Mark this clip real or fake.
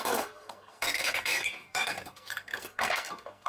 fake